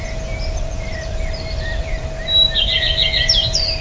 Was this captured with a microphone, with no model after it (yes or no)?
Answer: yes